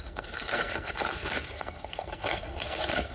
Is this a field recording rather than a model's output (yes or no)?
no